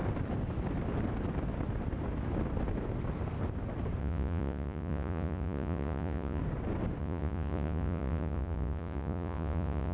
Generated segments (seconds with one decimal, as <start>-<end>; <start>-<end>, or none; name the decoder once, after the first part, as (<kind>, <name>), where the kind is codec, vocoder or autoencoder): 4.0-6.4 (vocoder, Vocos); 7.0-9.9